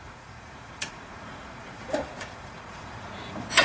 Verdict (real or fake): fake